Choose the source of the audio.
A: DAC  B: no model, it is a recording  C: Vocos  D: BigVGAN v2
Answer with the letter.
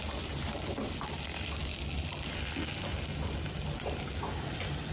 B